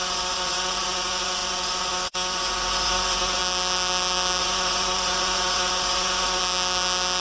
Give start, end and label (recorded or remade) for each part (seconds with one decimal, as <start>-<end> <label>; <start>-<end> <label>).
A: 0.0-3.4 remade; 3.4-4.4 recorded; 4.4-6.4 remade; 6.4-7.2 recorded